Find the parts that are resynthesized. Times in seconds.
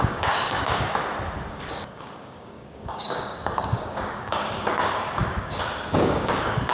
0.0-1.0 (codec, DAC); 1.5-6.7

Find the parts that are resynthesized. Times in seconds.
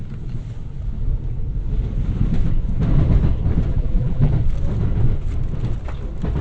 3.7-4.3 (vocoder, BigVGAN v2)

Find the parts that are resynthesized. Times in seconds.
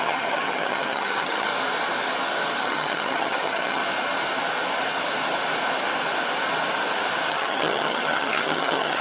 0.0-1.5 (vocoder, HiFi-GAN); 2.6-3.8; 7.3-9.0